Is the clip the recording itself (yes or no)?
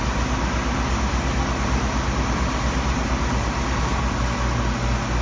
yes